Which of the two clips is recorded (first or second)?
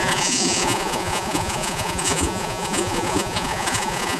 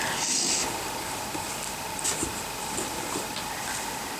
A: second